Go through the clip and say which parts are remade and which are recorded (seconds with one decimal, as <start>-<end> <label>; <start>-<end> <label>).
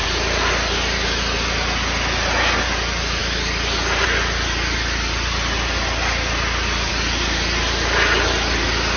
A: 0.0-0.5 remade; 0.5-9.0 recorded